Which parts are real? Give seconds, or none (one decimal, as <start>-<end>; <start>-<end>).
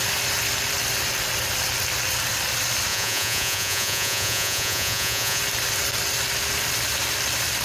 0.0-2.9; 5.4-7.6